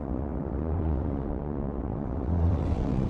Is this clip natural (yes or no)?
no